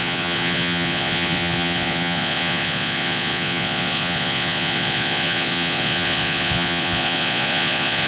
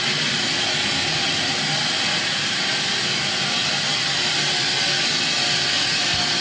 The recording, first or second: second